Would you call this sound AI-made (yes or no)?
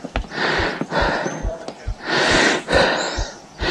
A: yes